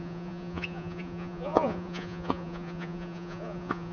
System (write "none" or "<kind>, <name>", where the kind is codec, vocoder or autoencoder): vocoder, Vocos